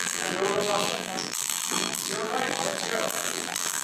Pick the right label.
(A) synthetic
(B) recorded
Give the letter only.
A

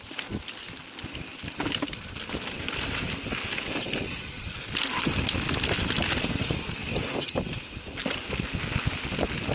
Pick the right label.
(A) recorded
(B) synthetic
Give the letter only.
A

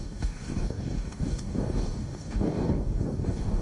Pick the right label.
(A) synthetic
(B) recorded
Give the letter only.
A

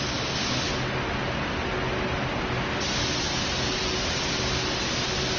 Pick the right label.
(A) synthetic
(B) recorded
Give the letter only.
B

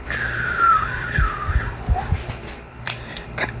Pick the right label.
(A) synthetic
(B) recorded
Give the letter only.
A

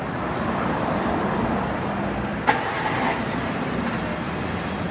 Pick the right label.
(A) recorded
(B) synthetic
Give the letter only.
A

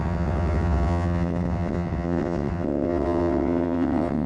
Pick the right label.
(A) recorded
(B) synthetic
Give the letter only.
B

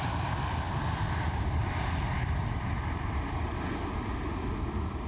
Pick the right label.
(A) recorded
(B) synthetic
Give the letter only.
A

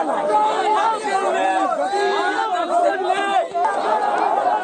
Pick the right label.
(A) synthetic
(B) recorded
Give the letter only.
B